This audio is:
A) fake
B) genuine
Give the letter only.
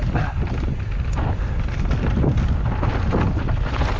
B